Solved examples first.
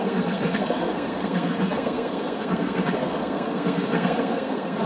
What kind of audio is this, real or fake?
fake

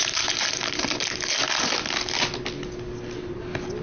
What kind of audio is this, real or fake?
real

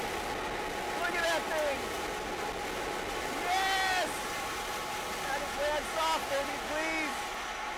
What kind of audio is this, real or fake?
real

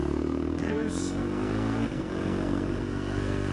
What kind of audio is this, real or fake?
fake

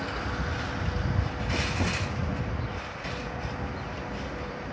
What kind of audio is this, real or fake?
real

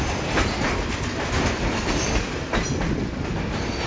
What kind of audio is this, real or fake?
real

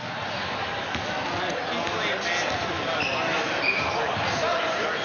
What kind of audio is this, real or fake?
real